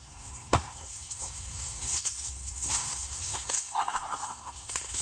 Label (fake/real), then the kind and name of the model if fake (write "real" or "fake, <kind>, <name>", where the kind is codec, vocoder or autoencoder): fake, codec, SNAC